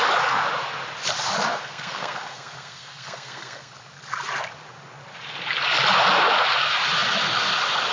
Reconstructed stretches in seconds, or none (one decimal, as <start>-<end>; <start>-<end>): 1.5-3.7